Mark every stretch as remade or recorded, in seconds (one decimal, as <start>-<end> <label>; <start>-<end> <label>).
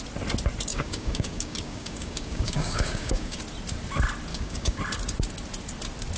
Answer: 0.0-0.7 recorded; 0.7-3.4 remade; 3.4-4.3 recorded; 4.3-4.8 remade; 4.8-6.2 recorded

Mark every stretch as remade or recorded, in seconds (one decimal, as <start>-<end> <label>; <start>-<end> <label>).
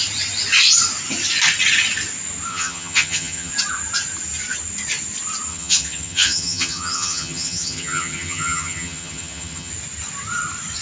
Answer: 0.0-2.5 recorded; 2.5-3.5 remade; 3.5-5.5 recorded; 5.5-9.7 remade; 9.7-10.8 recorded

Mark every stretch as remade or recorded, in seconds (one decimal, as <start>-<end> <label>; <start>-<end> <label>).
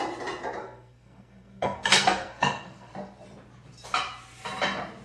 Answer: 0.0-0.6 recorded; 0.6-2.9 remade; 2.9-5.0 recorded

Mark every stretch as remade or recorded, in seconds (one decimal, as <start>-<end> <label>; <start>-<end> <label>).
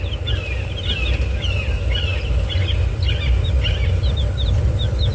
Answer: 0.0-5.1 recorded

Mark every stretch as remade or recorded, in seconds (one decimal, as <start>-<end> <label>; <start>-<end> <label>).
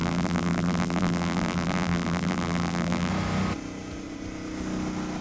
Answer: 0.0-3.1 remade; 3.1-5.2 recorded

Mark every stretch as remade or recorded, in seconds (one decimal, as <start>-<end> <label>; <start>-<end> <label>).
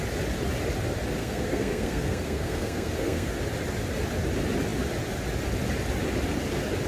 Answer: 0.0-1.2 recorded; 1.2-3.3 remade; 3.3-6.9 recorded